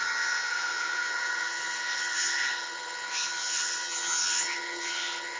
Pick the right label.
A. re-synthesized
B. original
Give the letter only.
A